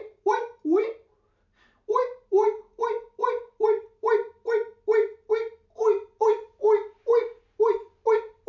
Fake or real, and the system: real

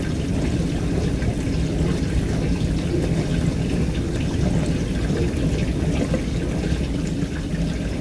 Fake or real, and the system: real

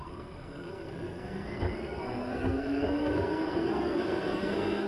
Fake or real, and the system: fake, codec, SNAC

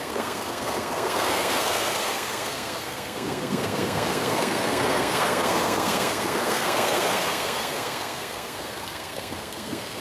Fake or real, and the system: fake, codec, SNAC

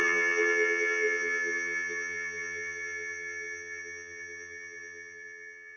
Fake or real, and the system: fake, vocoder, HiFi-GAN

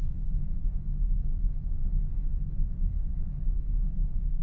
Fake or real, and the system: fake, autoencoder, DAC-VAE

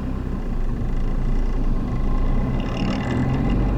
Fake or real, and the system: real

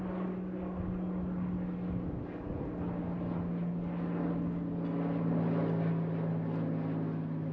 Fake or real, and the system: real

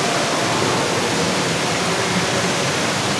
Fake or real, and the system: real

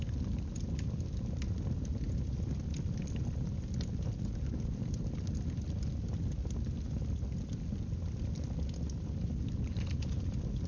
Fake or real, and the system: real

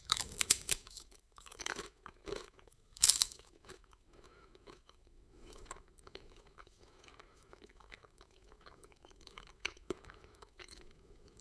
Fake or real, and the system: fake, autoencoder, DAC-VAE